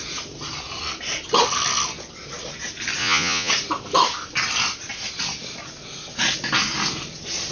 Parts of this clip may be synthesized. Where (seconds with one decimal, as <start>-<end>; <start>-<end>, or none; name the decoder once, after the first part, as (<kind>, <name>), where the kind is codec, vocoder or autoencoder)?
3.0-3.5 (vocoder, Vocos)